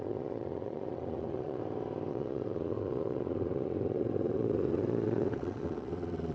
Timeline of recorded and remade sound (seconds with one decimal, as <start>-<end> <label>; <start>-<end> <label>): 0.0-1.6 remade; 1.6-2.1 recorded; 2.1-6.3 remade